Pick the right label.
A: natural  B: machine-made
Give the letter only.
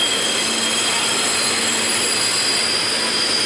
A